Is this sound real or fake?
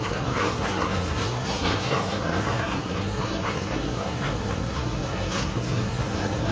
fake